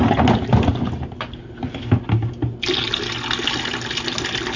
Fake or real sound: real